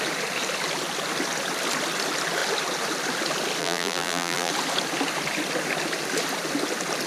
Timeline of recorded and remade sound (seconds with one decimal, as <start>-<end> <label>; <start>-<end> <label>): 0.0-3.6 recorded; 3.6-4.5 remade; 4.5-7.1 recorded

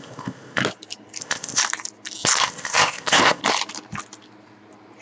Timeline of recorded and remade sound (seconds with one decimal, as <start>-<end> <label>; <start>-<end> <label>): 0.0-0.6 remade; 0.6-1.2 recorded; 1.2-1.6 remade; 1.6-2.4 recorded; 2.4-3.4 remade; 3.4-5.0 recorded

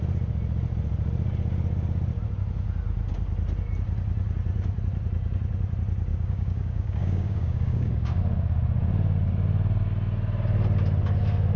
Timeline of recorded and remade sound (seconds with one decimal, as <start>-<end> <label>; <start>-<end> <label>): 0.0-6.1 recorded; 6.1-8.2 remade; 8.2-11.6 recorded

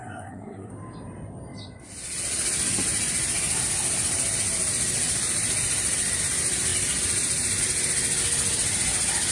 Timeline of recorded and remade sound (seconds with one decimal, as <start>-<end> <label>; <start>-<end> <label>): 0.0-0.7 remade; 0.7-9.3 recorded

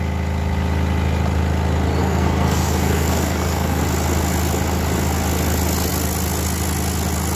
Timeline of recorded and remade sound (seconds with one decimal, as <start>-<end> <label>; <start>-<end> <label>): 0.0-2.0 recorded; 2.0-3.8 remade; 3.8-7.4 recorded